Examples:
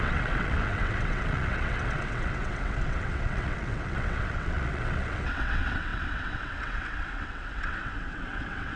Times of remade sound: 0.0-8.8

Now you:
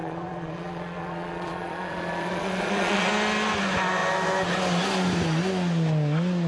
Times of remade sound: 0.0-3.1

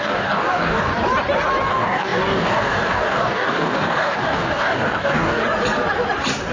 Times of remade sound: 0.0-0.9; 1.7-5.4

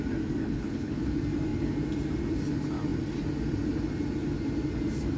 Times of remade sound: 0.4-1.1

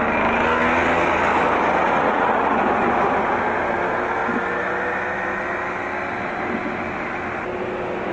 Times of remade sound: 1.8-2.6

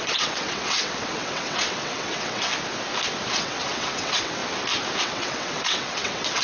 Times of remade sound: 0.0-2.5; 3.3-4.4; 5.0-6.4

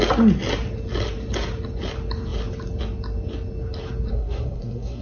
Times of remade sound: 4.1-5.0

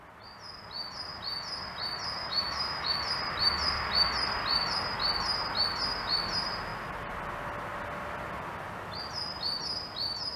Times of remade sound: 2.2-3.0